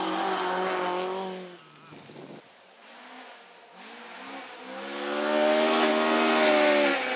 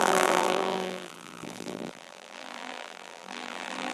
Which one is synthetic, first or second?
second